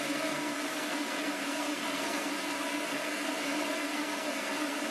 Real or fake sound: fake